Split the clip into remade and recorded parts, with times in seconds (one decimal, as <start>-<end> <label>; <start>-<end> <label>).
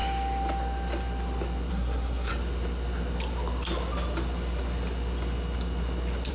0.0-1.7 recorded; 1.7-2.3 remade; 2.3-6.3 recorded